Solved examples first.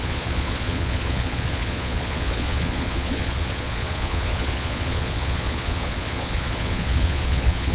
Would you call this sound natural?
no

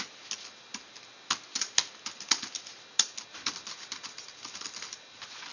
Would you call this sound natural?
yes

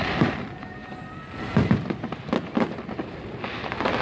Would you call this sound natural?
yes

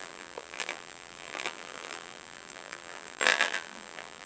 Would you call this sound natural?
no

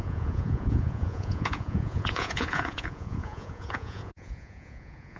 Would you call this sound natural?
no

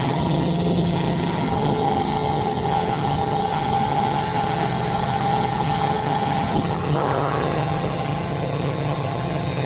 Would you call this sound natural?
no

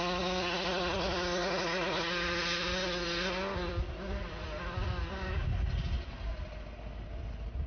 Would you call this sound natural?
yes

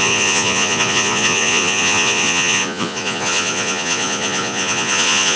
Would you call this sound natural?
no